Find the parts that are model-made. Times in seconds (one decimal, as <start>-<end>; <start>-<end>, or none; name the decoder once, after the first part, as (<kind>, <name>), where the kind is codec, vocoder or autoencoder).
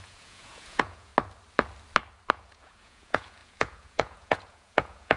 0.0-1.1 (vocoder, Vocos); 2.3-5.2